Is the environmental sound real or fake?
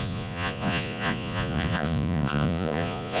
fake